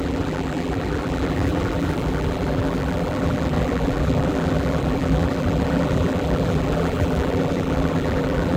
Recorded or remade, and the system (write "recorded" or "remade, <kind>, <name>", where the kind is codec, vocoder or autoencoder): remade, vocoder, BigVGAN v2